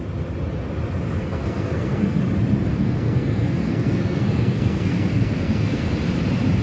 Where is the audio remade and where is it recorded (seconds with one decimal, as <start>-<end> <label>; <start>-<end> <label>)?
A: 0.0-1.2 recorded; 1.2-2.2 remade; 2.2-2.7 recorded; 2.7-5.9 remade; 5.9-6.6 recorded